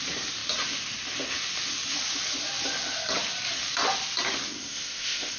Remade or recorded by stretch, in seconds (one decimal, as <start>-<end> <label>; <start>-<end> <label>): 0.0-4.5 recorded; 4.5-5.4 remade